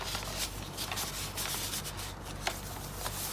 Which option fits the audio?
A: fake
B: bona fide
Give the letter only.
B